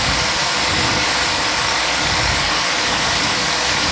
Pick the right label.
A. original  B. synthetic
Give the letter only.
B